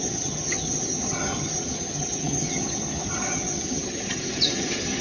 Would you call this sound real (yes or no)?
no